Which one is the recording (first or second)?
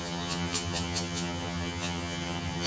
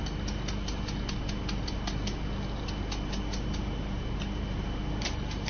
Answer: second